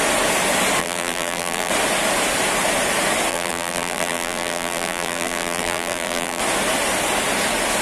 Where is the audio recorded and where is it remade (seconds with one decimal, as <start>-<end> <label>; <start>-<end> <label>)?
0.0-0.8 recorded; 0.8-1.7 remade; 1.7-3.3 recorded; 3.3-6.4 remade; 6.4-7.8 recorded